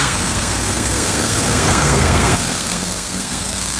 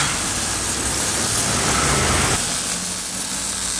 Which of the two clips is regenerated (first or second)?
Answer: first